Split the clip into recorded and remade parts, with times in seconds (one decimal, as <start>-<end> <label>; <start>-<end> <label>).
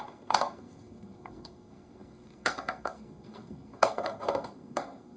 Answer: 0.0-5.2 remade